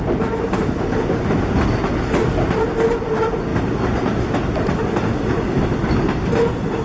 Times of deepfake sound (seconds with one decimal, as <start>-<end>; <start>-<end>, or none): none